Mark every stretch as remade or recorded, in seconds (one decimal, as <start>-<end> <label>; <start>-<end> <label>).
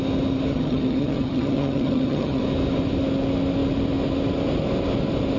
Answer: 0.0-0.5 recorded; 0.5-2.4 remade; 2.4-5.4 recorded